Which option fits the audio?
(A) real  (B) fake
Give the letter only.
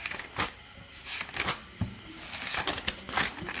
A